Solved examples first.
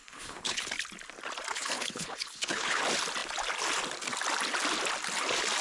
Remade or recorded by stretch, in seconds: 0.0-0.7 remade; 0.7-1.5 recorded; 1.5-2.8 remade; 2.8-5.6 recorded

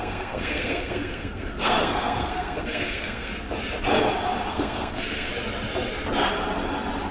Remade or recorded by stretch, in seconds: 0.0-3.3 remade; 3.3-4.5 recorded; 4.5-5.3 remade; 5.3-7.1 recorded

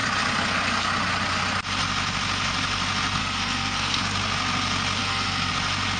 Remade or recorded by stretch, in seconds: 0.0-3.2 recorded; 3.2-4.0 remade; 4.0-5.0 recorded; 5.0-5.5 remade; 5.5-6.0 recorded

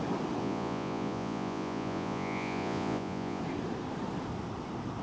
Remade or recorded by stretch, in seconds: 0.0-0.4 recorded; 0.4-3.4 remade; 3.4-5.0 recorded

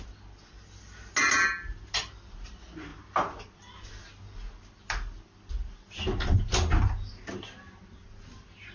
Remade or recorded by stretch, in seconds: 0.0-8.7 recorded

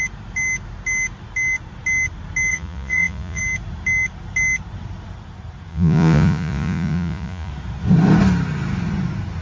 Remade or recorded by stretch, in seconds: 0.0-2.5 recorded; 2.5-3.4 remade; 3.4-5.7 recorded; 5.7-7.5 remade; 7.5-9.4 recorded